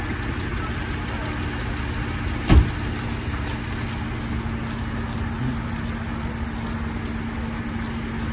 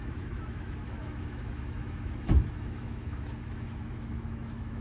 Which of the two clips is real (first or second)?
first